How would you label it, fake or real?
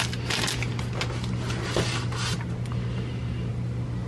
real